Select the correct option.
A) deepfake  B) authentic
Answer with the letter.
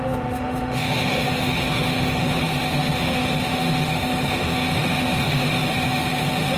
A